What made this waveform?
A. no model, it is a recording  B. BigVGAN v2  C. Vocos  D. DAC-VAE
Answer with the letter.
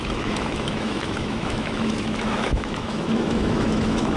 D